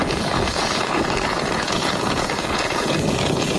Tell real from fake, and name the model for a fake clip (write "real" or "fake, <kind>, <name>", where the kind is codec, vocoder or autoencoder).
fake, vocoder, Vocos